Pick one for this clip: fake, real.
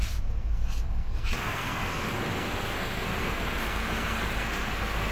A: fake